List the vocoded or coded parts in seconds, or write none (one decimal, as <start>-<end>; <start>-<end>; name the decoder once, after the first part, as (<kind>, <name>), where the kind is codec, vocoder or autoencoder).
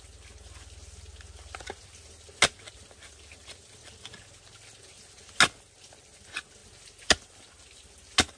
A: none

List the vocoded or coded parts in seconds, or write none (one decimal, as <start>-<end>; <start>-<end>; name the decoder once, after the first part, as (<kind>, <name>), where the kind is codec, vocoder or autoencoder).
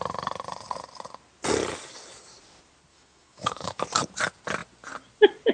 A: 2.9-3.8 (autoencoder, DAC-VAE)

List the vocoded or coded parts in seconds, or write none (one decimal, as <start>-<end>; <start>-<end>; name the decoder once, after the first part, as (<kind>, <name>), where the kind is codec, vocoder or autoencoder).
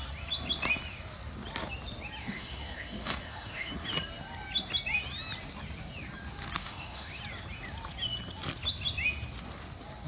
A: 2.2-3.7 (autoencoder, DAC-VAE); 6.6-7.2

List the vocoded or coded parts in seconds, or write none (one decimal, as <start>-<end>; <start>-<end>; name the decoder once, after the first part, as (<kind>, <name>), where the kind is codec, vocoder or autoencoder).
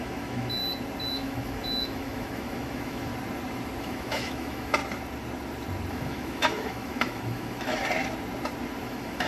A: 0.0-0.6 (autoencoder, DAC-VAE); 1.1-3.1; 3.8-4.8; 5.9-7.8; 8.8-9.3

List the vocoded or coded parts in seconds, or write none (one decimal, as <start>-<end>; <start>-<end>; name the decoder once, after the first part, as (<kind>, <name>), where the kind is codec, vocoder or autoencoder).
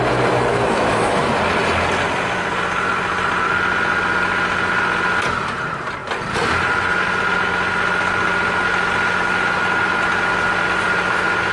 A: 0.5-1.3 (autoencoder, DAC-VAE)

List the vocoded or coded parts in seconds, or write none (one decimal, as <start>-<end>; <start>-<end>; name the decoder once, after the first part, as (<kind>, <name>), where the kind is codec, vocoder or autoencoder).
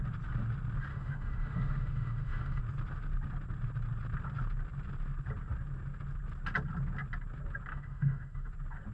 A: 0.9-2.6 (autoencoder, DAC-VAE); 7.7-8.5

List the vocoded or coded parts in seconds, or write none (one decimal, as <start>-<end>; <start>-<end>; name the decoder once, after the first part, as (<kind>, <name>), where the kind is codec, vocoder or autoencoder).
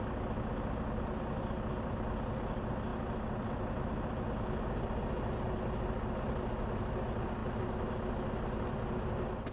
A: none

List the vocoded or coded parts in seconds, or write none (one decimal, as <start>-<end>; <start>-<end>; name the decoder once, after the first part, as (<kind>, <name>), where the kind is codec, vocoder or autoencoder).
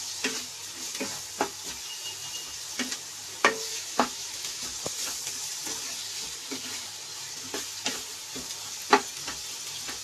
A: 3.7-4.6 (autoencoder, DAC-VAE)